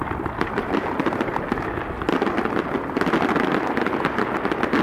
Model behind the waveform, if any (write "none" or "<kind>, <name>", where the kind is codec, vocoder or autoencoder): none